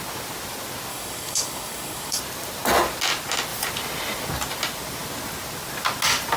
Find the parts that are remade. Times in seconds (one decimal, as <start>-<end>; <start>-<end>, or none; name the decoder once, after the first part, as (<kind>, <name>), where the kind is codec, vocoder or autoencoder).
0.9-2.2 (codec, DAC)